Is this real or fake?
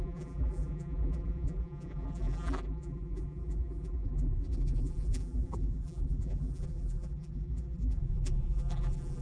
fake